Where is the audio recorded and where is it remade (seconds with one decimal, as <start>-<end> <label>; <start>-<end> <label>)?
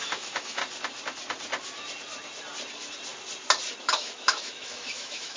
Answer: 0.0-0.6 remade; 0.6-3.8 recorded; 3.8-5.4 remade